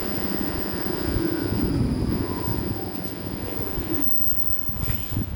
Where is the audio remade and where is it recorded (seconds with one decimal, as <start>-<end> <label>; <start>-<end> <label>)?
0.0-1.7 remade; 1.7-2.1 recorded; 2.1-5.4 remade